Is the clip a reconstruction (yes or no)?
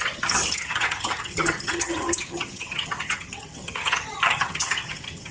yes